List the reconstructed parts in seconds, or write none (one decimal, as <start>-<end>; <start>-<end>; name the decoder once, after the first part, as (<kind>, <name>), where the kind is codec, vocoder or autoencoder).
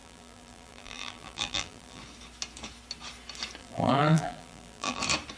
0.0-2.0 (vocoder, BigVGAN v2); 3.6-5.0